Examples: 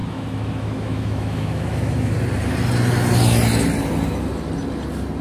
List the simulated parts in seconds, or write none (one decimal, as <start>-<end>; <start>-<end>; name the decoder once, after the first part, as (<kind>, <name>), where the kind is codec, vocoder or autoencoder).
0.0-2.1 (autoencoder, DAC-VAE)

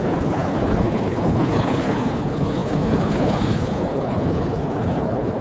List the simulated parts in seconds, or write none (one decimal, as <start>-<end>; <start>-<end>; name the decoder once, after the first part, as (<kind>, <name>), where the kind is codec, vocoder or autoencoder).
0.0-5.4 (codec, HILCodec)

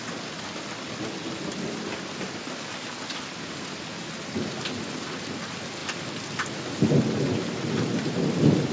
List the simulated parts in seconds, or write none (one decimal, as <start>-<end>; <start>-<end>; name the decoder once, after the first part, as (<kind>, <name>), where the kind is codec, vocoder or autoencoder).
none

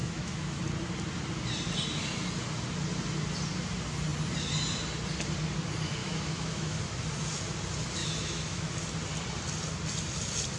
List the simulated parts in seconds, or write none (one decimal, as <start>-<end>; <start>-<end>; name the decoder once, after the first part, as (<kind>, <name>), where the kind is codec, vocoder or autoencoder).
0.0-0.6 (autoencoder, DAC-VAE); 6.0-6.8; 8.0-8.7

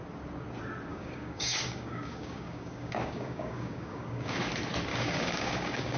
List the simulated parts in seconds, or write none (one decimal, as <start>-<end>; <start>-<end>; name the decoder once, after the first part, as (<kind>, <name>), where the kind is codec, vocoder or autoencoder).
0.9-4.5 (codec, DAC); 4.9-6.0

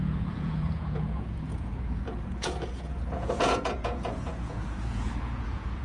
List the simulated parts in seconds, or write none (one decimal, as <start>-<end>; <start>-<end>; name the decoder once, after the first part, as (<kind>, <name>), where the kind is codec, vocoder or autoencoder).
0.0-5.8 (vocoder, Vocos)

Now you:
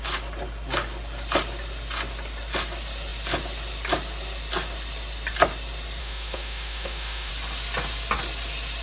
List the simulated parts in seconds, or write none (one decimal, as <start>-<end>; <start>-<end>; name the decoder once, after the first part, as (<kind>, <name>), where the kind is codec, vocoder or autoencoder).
6.0-7.3 (autoencoder, DAC-VAE)

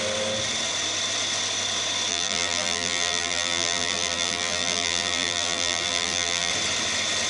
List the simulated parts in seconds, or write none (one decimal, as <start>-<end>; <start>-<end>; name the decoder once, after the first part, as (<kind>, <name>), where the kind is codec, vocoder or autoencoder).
2.1-6.5 (vocoder, BigVGAN v2)